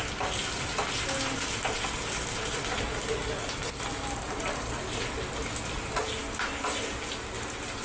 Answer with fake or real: real